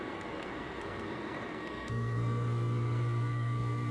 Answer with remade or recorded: remade